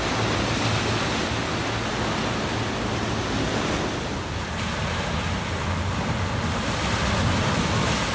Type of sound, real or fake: real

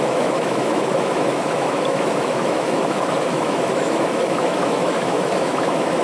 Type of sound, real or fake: fake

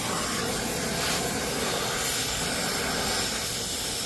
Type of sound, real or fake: real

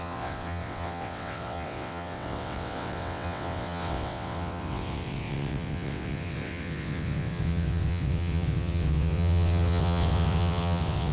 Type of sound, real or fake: fake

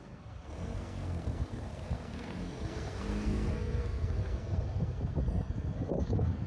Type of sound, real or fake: fake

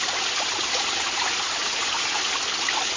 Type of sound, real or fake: real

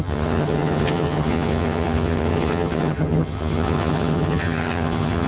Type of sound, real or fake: fake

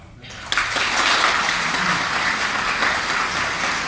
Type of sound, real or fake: real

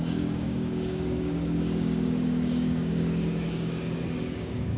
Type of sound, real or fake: fake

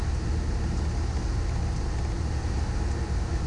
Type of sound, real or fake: real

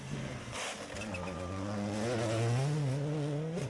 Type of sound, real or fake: real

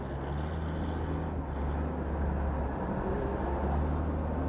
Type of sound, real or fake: real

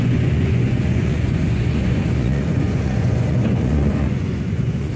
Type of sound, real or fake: fake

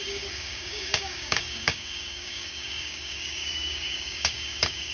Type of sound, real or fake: fake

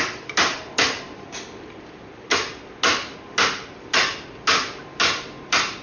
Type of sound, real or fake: real